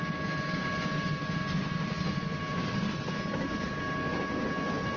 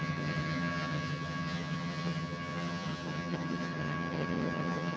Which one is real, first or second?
first